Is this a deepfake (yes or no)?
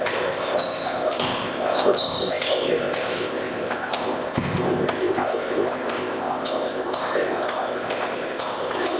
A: yes